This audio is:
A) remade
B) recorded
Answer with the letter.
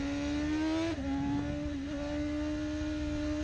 B